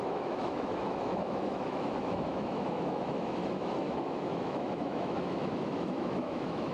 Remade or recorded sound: remade